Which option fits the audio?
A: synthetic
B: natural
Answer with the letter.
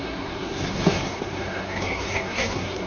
A